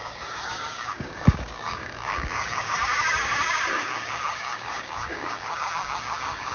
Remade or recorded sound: remade